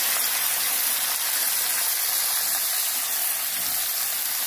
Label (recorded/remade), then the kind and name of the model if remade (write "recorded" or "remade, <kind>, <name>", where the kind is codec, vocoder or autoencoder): recorded